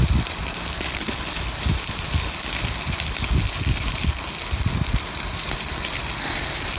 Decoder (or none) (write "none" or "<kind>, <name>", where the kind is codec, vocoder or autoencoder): none